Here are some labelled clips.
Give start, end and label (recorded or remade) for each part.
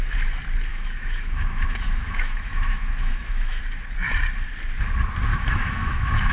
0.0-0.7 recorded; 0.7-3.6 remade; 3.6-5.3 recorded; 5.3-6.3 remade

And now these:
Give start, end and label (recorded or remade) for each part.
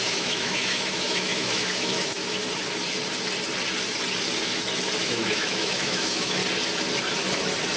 0.0-2.4 remade; 2.4-5.0 recorded; 5.0-6.4 remade; 6.4-7.8 recorded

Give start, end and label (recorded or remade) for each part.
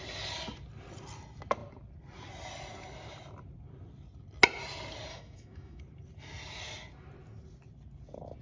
0.0-5.1 recorded; 5.1-5.8 remade; 5.8-8.4 recorded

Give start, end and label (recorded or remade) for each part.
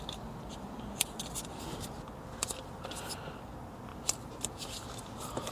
0.0-5.5 recorded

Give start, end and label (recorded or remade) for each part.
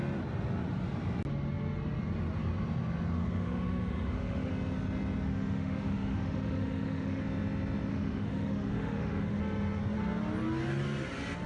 0.0-3.2 recorded; 3.2-4.5 remade; 4.5-5.3 recorded; 5.3-7.2 remade; 7.2-7.9 recorded; 7.9-9.4 remade; 9.4-11.5 recorded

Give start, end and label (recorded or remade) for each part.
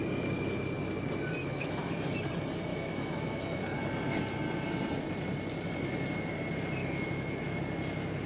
0.0-1.4 recorded; 1.4-2.1 remade; 2.1-2.7 recorded; 2.7-3.6 remade; 3.6-6.8 recorded; 6.8-7.6 remade; 7.6-8.3 recorded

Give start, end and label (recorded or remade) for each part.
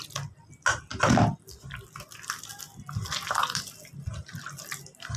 0.0-5.2 recorded